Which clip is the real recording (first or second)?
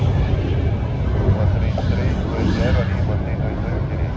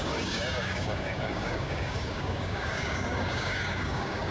first